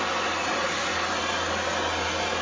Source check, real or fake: real